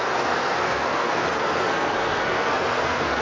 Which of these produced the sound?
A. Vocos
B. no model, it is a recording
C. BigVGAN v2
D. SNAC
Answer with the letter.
D